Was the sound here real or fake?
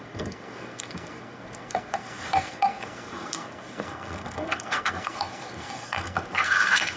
fake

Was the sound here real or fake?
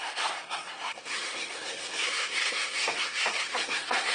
fake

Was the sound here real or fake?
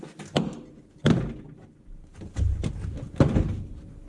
real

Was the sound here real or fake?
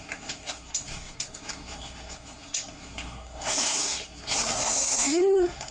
fake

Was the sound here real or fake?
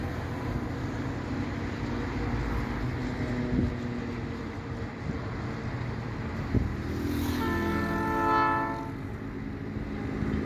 real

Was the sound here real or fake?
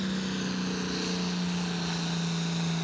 real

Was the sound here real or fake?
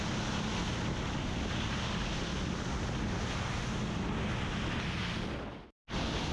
real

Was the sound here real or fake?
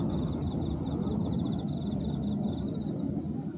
real